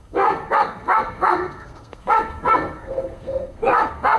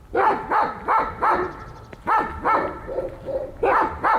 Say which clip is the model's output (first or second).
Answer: first